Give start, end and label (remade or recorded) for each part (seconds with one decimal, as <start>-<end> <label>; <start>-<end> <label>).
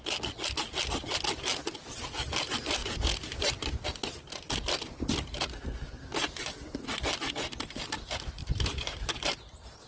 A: 0.0-2.8 recorded; 2.8-4.0 remade; 4.0-8.4 recorded; 8.4-9.9 remade